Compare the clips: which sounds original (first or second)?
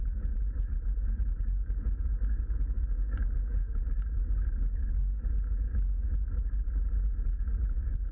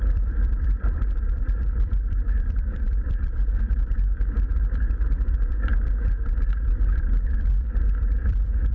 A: first